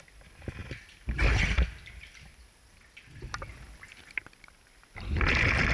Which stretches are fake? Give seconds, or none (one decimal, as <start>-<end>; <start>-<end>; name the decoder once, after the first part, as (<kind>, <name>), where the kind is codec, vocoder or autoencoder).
none